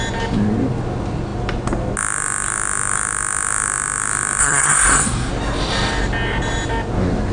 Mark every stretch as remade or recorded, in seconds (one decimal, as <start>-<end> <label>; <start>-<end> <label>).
0.0-4.4 recorded; 4.4-5.3 remade; 5.3-7.3 recorded